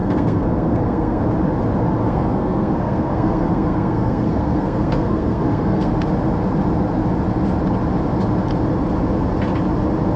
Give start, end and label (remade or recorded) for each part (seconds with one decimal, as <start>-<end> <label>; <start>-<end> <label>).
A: 0.0-1.2 remade; 1.2-2.0 recorded; 2.0-5.9 remade; 5.9-10.2 recorded